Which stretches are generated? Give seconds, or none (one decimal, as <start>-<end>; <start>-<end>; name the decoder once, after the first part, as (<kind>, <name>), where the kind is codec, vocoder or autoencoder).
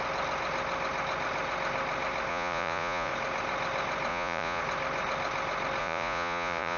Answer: 2.3-3.1 (vocoder, Vocos); 4.1-4.6; 5.8-6.8